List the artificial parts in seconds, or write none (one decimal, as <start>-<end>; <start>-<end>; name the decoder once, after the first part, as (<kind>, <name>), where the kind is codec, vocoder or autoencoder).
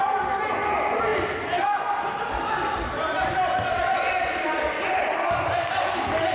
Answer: none